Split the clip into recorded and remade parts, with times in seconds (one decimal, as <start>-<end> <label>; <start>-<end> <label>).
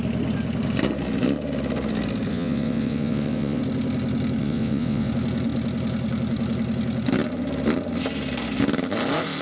0.0-2.3 recorded; 2.3-3.6 remade; 3.6-4.4 recorded; 4.4-5.1 remade; 5.1-9.4 recorded